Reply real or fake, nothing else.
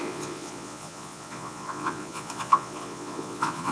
fake